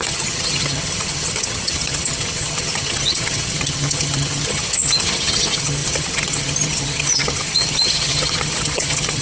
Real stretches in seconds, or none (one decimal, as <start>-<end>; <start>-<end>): none